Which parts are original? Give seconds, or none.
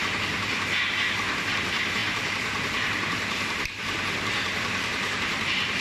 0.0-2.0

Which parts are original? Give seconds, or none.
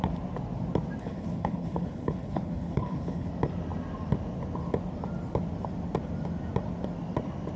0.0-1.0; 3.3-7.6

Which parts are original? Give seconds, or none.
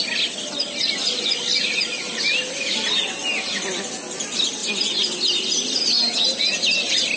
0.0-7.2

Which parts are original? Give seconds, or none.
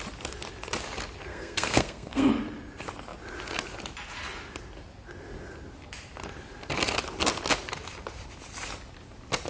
0.0-1.3; 2.3-9.5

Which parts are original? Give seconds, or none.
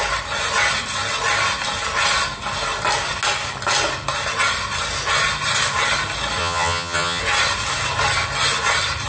0.0-6.4; 7.2-9.1